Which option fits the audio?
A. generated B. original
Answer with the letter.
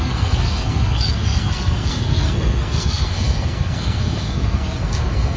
A